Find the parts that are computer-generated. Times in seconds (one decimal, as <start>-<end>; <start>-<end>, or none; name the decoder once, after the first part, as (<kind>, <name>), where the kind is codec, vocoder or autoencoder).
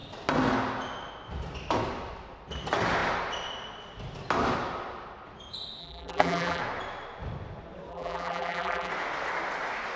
5.8-6.6 (vocoder, BigVGAN v2); 7.9-8.9